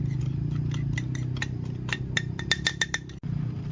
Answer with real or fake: real